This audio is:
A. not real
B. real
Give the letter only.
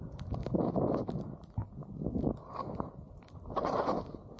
B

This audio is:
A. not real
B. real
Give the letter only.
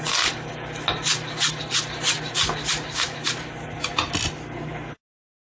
B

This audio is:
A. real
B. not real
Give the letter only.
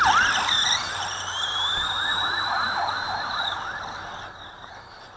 A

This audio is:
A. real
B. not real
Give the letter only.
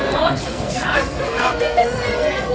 B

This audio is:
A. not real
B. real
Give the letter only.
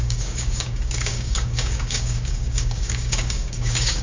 A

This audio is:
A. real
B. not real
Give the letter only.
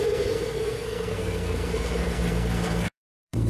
B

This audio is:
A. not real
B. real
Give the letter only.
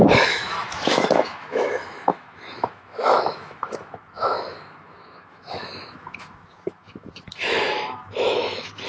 A